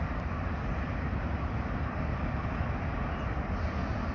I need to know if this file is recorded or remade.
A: recorded